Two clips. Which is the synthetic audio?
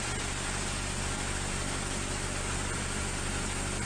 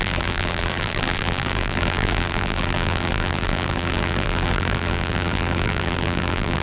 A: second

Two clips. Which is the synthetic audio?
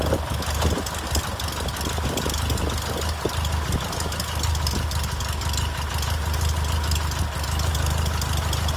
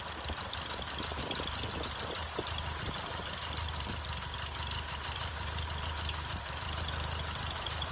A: second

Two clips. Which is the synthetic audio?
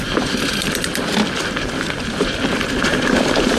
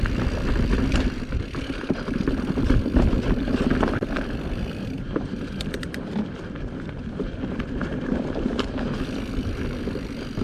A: second